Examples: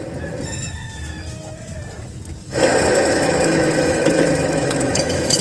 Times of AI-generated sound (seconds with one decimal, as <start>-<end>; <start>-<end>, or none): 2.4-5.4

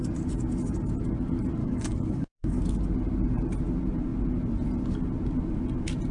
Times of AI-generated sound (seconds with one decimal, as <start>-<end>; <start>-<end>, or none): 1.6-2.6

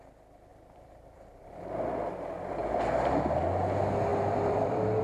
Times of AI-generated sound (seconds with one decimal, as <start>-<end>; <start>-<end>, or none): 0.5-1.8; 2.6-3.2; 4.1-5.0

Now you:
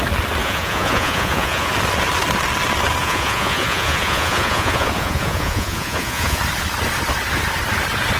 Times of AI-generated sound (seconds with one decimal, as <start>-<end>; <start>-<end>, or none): 0.4-1.7; 3.0-6.4